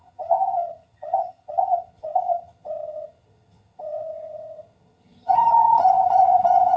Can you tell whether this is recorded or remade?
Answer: remade